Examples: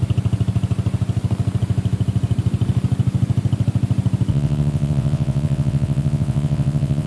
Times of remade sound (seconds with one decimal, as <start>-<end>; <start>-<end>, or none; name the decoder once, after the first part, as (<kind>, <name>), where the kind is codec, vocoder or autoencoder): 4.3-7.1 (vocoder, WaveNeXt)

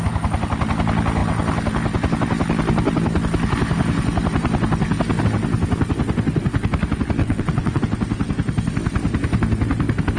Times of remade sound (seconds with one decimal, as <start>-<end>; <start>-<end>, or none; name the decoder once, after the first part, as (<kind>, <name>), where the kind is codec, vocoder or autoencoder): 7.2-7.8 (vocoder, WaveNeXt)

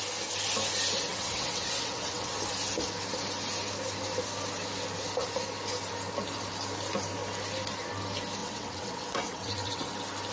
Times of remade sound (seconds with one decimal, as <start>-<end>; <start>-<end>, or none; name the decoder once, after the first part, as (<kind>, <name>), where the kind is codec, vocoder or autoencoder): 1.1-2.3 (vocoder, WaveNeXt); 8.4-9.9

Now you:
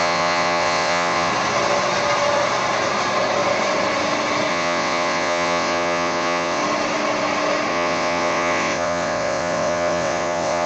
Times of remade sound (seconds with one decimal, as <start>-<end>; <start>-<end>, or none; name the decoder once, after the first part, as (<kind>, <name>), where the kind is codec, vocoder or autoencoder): 0.0-1.3 (vocoder, WaveNeXt); 4.5-6.6; 7.7-10.7

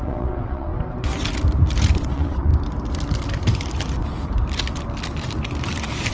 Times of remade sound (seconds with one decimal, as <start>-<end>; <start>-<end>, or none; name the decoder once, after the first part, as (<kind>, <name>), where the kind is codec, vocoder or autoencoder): 0.0-0.7 (vocoder, WaveNeXt); 2.0-2.5

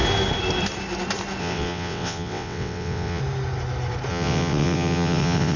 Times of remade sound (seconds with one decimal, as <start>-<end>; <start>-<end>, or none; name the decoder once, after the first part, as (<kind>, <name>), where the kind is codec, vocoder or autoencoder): 1.4-3.2 (vocoder, WaveNeXt); 4.1-5.6